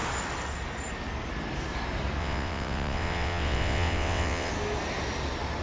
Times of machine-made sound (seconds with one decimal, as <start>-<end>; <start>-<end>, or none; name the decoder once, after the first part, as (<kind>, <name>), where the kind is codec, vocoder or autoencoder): 2.2-4.5 (vocoder, WaveNeXt)